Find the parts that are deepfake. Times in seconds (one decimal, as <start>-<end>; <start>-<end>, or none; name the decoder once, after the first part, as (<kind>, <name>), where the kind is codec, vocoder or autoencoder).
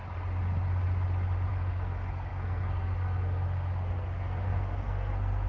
1.5-5.5 (codec, SNAC)